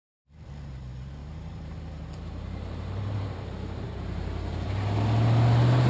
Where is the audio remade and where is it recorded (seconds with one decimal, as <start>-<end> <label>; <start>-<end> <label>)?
0.0-1.2 recorded; 1.2-4.7 remade; 4.7-5.9 recorded